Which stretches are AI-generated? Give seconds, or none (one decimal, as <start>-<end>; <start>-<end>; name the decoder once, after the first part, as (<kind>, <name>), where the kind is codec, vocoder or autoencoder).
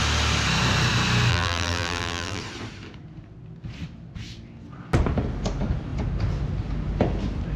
1.3-2.4 (vocoder, BigVGAN v2)